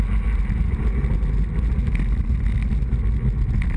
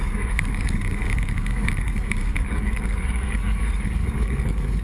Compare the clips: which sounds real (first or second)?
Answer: first